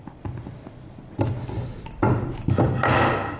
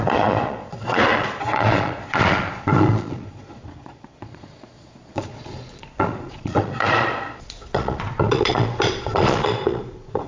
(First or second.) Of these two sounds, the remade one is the second